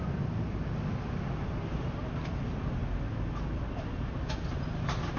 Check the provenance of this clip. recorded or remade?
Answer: recorded